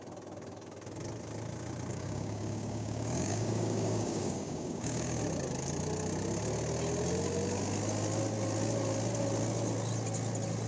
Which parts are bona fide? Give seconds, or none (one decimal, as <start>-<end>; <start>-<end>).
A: 0.0-1.9; 5.2-10.7